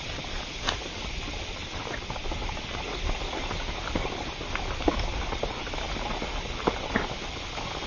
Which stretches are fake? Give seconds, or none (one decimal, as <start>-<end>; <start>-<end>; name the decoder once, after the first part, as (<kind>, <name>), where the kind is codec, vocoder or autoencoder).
none